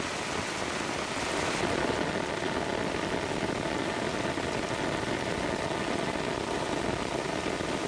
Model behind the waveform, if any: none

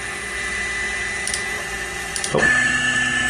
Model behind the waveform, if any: none